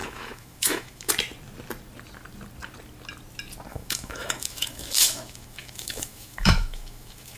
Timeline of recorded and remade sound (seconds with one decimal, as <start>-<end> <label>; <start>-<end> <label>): 0.0-1.1 remade; 1.1-3.7 recorded; 3.7-7.4 remade